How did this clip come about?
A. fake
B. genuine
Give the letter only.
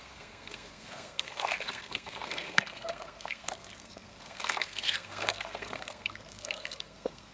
A